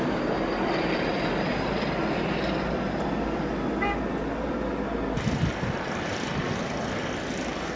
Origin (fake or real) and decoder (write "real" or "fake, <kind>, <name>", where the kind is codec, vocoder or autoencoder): real